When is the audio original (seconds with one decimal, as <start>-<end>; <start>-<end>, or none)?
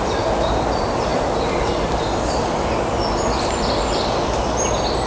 0.0-5.1